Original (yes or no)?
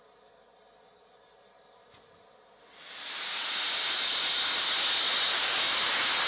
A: yes